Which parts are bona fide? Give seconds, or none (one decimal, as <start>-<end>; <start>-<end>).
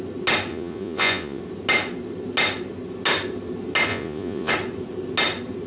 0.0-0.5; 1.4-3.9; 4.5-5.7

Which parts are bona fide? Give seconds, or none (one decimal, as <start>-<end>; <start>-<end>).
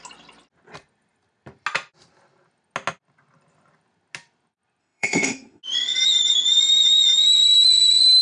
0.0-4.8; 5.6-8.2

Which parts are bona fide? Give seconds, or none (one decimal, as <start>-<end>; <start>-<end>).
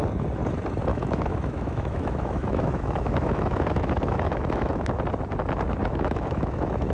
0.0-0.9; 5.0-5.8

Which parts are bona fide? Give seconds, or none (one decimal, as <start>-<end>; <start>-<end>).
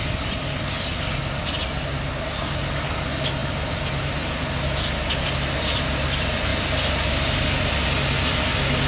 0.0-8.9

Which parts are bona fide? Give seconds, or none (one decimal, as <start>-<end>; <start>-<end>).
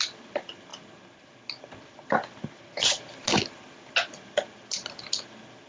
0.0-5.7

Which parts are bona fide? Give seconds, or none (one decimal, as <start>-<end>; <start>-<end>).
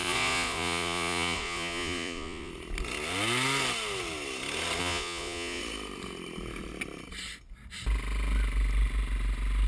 2.5-4.8; 5.6-9.7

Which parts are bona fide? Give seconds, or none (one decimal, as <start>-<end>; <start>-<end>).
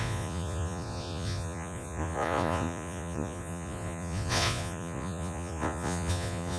none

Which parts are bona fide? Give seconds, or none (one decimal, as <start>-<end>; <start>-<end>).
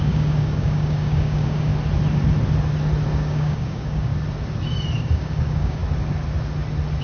1.7-3.1; 4.1-5.0; 5.8-7.0